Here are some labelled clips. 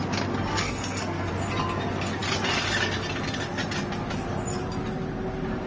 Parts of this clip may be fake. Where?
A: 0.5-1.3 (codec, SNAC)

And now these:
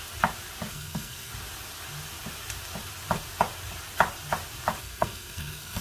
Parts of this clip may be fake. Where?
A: 0.7-1.3 (codec, SNAC); 4.8-5.8

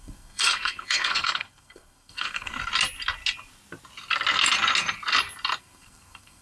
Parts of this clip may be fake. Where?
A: 0.0-2.7 (codec, SNAC); 5.6-6.4

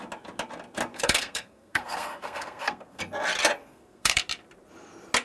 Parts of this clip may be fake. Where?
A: 0.9-3.0 (codec, SNAC); 3.6-4.2